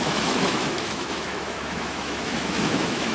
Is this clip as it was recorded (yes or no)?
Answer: no